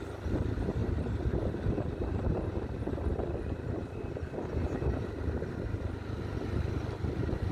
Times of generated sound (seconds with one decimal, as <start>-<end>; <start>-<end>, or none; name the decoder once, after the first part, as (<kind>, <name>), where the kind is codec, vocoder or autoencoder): none